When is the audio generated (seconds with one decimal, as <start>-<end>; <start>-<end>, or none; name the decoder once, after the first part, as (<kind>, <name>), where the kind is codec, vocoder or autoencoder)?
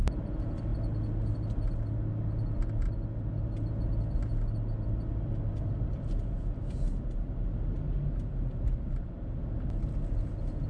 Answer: none